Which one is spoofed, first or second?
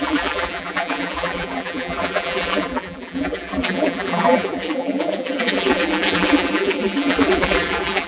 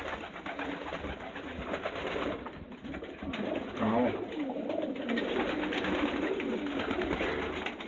first